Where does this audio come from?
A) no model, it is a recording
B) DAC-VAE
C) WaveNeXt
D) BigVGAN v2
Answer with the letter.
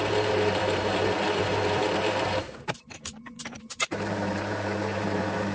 D